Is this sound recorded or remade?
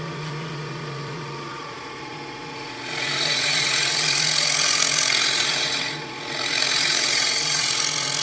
remade